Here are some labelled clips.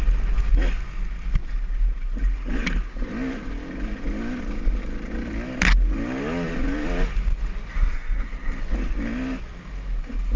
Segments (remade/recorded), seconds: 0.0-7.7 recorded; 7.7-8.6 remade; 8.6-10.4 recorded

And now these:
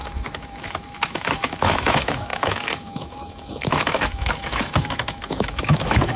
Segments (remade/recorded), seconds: 0.0-6.2 remade

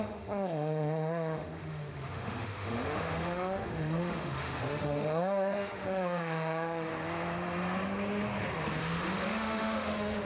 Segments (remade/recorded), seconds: 0.0-6.9 remade; 6.9-8.8 recorded; 8.8-10.3 remade

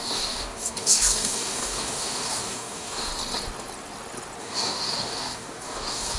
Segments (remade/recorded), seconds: 0.0-3.1 remade; 3.1-4.4 recorded; 4.4-6.2 remade

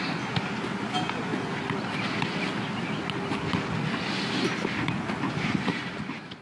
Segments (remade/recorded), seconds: 0.0-6.4 recorded

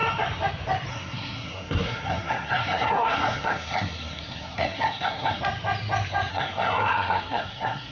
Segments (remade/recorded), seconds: 0.0-0.9 recorded; 0.9-5.4 remade; 5.4-6.3 recorded; 6.3-7.9 remade